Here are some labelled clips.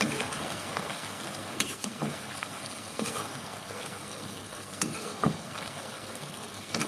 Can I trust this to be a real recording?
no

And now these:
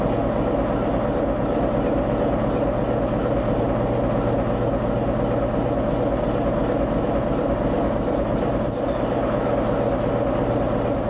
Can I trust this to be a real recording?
yes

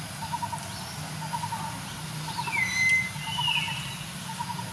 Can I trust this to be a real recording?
yes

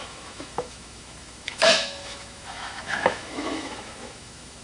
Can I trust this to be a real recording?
no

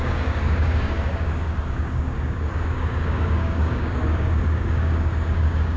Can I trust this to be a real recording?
no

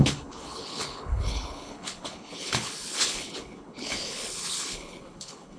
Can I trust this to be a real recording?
no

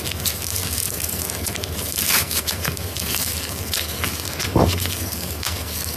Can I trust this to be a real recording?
no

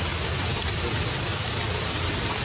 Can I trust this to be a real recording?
yes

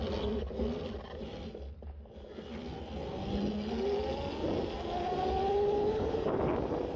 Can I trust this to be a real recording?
yes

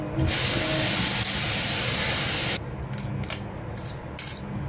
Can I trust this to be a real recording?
yes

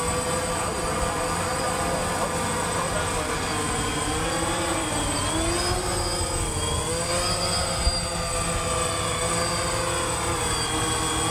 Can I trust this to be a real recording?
yes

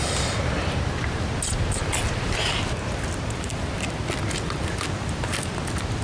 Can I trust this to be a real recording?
yes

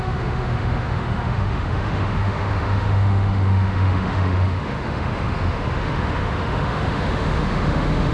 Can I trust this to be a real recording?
no